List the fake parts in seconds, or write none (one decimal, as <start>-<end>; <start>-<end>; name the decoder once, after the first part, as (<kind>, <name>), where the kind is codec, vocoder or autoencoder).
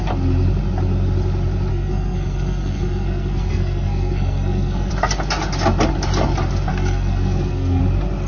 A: 1.7-4.9 (codec, SNAC); 6.7-7.8